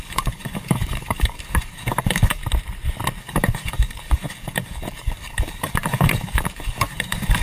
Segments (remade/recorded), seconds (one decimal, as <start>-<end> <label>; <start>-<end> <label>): 0.0-2.4 remade; 2.4-3.2 recorded; 3.2-7.4 remade

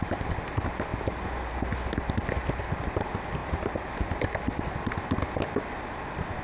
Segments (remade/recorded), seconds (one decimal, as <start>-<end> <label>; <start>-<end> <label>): 0.0-6.4 recorded

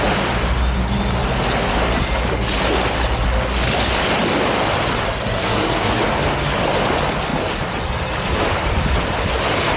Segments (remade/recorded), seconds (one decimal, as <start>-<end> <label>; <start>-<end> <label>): 0.0-5.4 recorded; 5.4-6.0 remade; 6.0-9.8 recorded

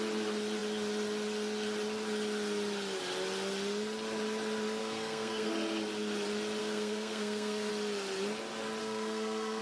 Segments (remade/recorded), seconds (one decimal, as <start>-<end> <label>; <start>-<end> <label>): 0.0-4.8 recorded; 4.8-5.5 remade; 5.5-6.6 recorded; 6.6-7.7 remade; 7.7-8.8 recorded; 8.8-9.6 remade

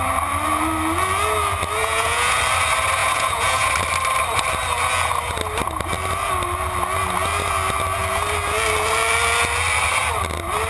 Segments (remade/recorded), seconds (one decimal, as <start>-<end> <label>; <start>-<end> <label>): 0.0-1.8 recorded; 1.8-2.4 remade; 2.4-3.0 recorded; 3.0-3.7 remade; 3.7-10.7 recorded

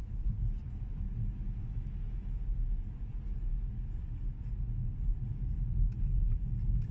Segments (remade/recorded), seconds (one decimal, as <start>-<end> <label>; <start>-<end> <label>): 0.0-6.9 recorded

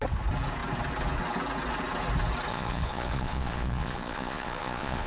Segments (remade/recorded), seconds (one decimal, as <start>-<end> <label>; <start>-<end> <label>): 0.0-2.5 recorded; 2.5-5.1 remade